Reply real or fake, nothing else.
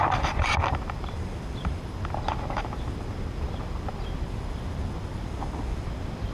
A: real